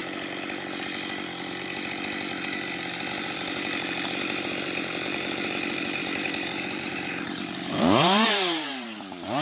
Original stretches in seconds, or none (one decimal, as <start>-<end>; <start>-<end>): 0.0-2.9